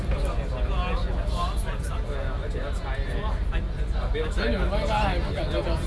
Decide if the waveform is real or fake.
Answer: real